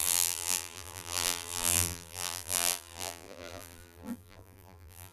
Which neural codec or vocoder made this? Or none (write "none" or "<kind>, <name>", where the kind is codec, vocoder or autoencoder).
vocoder, BigVGAN v2